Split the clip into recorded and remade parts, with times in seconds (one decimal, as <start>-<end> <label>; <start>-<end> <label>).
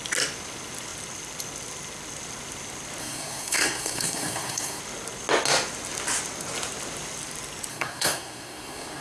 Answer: 0.0-3.0 recorded; 3.0-4.8 remade; 4.8-7.7 recorded; 7.7-9.0 remade